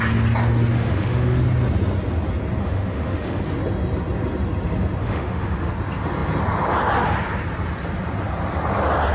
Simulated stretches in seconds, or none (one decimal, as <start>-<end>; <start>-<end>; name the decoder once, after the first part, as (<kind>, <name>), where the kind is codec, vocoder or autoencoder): 0.7-1.4 (autoencoder, DAC-VAE); 2.6-3.4; 5.0-5.7